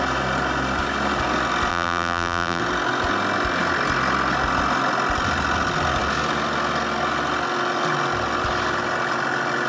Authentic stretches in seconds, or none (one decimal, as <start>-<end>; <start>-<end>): 0.0-1.7; 2.6-9.7